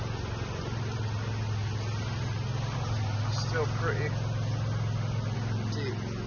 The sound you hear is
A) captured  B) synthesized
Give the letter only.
A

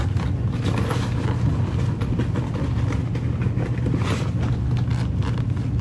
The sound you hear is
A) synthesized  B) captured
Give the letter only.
B